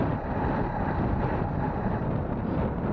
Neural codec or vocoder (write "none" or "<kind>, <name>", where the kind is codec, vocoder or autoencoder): none